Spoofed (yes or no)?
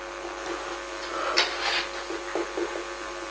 no